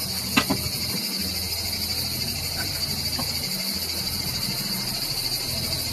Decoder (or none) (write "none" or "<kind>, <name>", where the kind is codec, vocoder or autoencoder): none